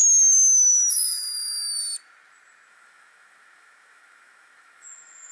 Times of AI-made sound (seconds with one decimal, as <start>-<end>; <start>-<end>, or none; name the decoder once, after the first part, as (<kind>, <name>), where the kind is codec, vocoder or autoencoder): 0.0-1.8 (autoencoder, DAC-VAE); 2.7-5.3

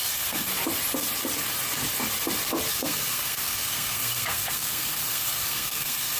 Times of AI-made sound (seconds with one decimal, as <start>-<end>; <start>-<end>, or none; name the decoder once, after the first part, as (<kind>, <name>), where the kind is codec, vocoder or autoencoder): 0.0-0.5 (codec, SNAC); 2.7-6.2

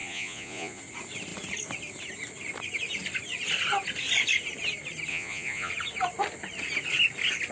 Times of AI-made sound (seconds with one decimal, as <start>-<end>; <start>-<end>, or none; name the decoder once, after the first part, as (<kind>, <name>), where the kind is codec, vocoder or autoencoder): 0.0-0.8 (vocoder, Vocos); 5.1-5.7

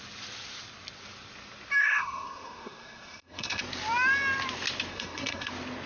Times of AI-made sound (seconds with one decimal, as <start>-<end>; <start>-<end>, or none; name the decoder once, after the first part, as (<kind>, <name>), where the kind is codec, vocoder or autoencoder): 1.8-3.6 (codec, SNAC); 4.9-5.5